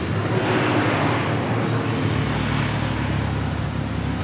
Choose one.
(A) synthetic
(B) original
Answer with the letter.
B